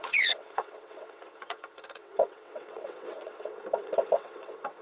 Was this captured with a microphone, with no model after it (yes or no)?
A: no